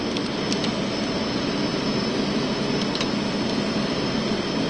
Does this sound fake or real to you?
real